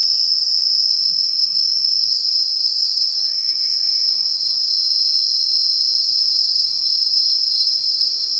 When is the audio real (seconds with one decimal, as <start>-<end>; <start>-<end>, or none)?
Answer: 0.0-0.9; 4.7-6.0